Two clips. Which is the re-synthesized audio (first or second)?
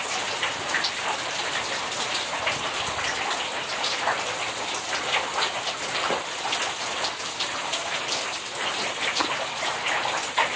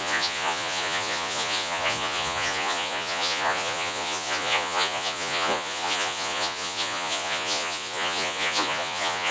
second